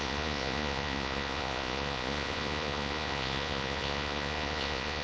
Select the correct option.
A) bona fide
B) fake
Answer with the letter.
B